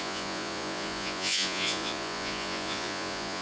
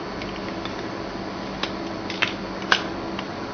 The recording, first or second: second